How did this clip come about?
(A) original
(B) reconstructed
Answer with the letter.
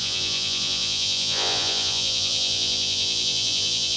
B